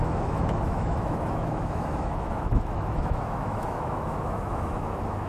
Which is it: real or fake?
fake